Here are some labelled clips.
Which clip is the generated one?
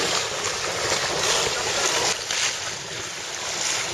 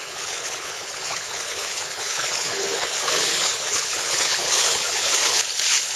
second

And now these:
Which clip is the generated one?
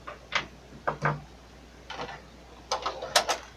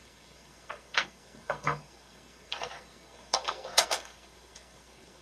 second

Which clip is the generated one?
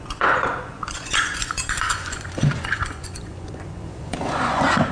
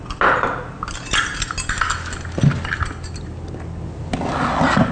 first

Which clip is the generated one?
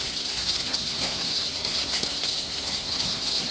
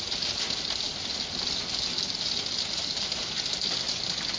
first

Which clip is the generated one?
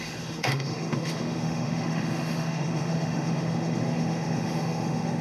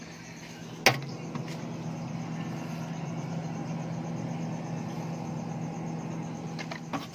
first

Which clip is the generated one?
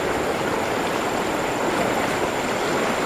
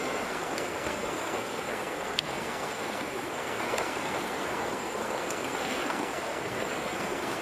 second